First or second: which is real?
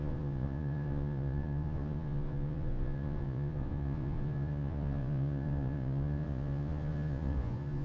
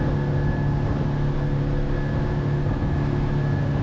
second